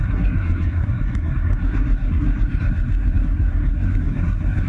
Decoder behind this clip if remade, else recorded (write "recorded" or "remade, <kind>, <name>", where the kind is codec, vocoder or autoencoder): remade, codec, SNAC